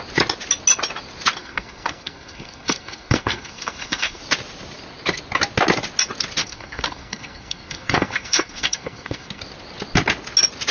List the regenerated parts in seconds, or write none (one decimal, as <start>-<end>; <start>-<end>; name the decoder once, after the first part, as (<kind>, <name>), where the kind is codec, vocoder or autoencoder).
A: 1.4-4.2 (codec, SNAC); 6.4-9.4